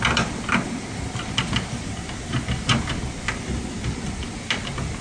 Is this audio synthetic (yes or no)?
no